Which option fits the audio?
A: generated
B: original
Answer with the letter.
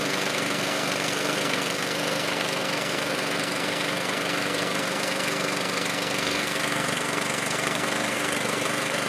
A